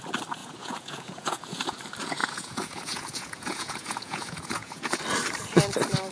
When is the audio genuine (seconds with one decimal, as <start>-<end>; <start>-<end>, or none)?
0.0-0.4; 1.8-2.2; 5.0-6.1